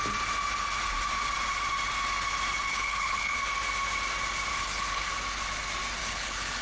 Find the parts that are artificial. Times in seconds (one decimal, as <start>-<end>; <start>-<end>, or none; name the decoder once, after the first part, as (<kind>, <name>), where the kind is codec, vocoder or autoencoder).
2.7-3.4 (codec, HILCodec); 4.5-5.1; 6.0-6.6